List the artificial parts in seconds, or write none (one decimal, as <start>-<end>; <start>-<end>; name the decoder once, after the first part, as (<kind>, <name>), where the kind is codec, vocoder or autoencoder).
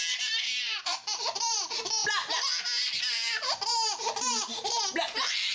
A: 0.0-2.0 (vocoder, BigVGAN v2); 3.0-3.7